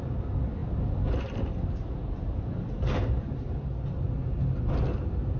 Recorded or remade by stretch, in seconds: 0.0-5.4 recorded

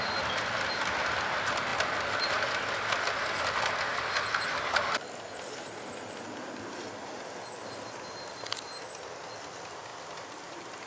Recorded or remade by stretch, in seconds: 0.0-10.9 recorded